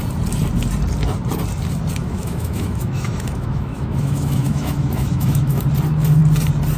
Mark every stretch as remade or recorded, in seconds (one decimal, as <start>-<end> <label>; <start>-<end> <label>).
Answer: 0.0-2.0 recorded; 2.0-5.6 remade; 5.6-6.8 recorded